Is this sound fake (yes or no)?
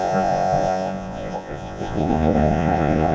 yes